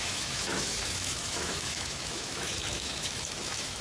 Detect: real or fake fake